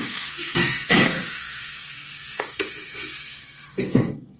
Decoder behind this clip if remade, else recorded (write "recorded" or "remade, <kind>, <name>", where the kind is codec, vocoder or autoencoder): remade, codec, SNAC